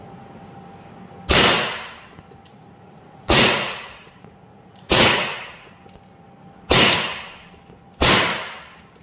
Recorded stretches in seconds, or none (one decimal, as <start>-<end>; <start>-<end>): 0.0-2.5; 5.7-9.0